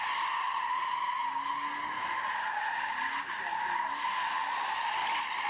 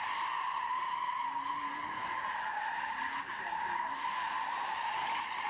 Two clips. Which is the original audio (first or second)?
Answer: first